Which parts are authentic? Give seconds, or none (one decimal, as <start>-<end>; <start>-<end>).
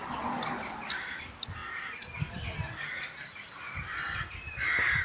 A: 0.0-5.0